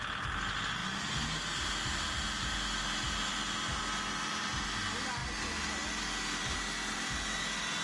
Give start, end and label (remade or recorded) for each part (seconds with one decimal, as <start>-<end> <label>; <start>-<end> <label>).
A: 0.0-7.8 recorded